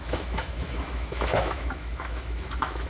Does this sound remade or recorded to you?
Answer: remade